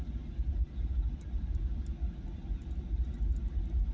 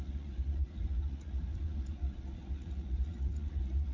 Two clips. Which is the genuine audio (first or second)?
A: first